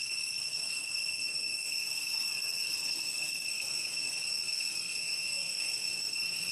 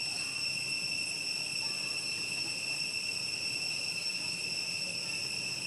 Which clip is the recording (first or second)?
second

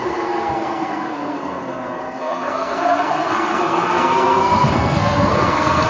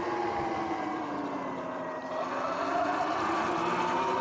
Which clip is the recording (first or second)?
second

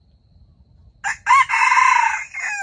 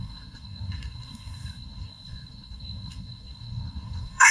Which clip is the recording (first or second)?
first